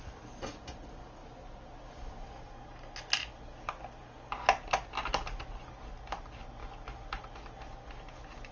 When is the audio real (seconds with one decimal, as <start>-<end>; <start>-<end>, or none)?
0.0-8.5

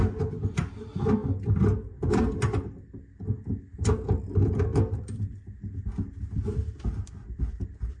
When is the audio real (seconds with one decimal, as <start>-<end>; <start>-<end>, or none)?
0.0-8.0

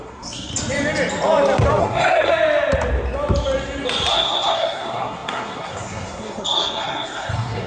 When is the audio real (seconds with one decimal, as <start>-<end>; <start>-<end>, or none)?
0.5-1.8; 2.3-4.1

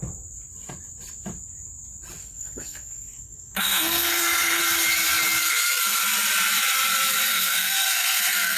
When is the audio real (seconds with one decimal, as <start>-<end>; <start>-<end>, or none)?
0.0-2.2; 4.6-5.4; 6.0-7.3